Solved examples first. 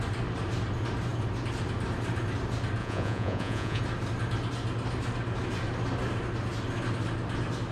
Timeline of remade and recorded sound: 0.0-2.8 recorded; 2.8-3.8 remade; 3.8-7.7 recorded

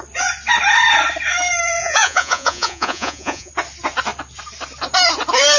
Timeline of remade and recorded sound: 0.0-1.8 recorded; 1.8-3.5 remade; 3.5-5.6 recorded